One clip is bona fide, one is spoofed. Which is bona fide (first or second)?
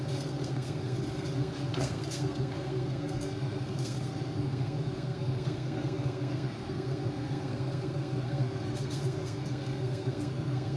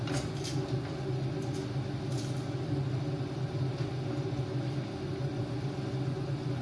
second